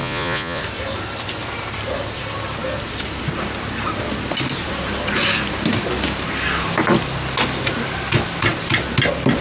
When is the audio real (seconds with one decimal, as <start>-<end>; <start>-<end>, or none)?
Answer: 0.6-9.4